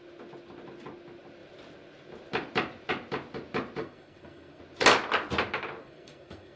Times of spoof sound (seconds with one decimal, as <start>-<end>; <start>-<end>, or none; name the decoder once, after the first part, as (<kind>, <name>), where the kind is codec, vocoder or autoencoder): 3.8-4.6 (codec, SNAC); 5.8-6.6